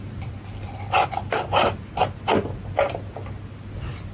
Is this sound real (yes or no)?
yes